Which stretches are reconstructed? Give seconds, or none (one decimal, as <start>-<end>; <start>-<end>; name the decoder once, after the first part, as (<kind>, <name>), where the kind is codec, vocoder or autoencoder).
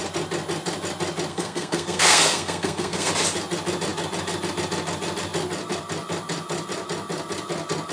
1.3-3.1 (codec, SNAC)